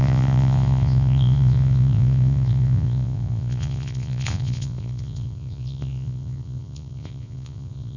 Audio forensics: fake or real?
fake